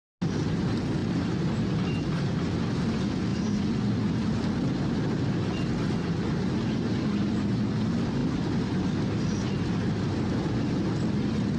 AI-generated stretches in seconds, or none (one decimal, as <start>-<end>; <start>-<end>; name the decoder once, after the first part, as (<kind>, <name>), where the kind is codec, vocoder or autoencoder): none